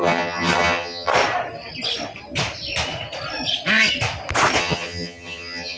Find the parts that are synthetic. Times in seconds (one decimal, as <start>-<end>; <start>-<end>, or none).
0.0-1.1; 4.6-5.8